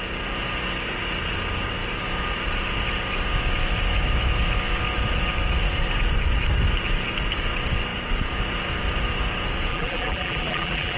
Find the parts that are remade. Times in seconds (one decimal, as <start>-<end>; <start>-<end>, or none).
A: 9.7-11.0